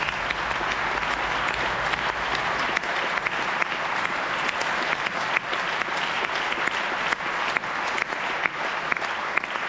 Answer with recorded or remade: recorded